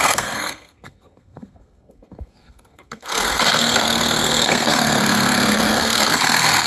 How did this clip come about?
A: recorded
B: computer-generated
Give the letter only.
B